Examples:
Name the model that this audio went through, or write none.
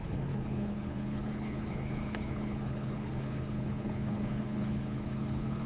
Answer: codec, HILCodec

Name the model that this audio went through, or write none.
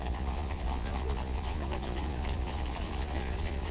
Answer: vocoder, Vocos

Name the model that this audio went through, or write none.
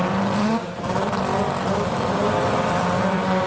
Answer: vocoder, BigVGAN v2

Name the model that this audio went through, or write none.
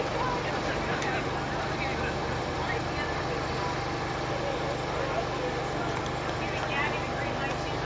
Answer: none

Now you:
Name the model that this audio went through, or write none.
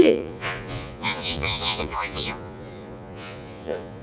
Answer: vocoder, Vocos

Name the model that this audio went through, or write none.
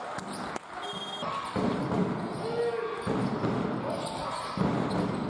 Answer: none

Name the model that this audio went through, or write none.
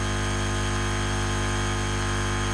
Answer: none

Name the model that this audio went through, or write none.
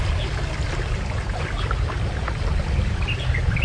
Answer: none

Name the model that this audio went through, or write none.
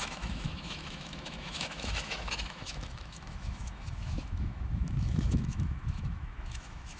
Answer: autoencoder, DAC-VAE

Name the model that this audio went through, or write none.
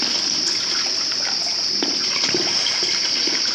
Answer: none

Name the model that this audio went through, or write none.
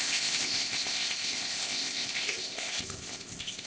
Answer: codec, ZipCodec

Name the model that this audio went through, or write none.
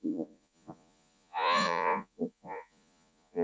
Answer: vocoder, Vocos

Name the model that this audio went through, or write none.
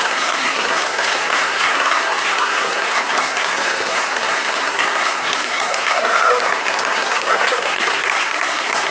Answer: codec, SNAC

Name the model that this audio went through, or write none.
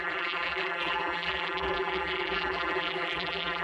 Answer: vocoder, BigVGAN v2